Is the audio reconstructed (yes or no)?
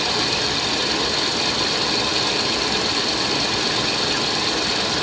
no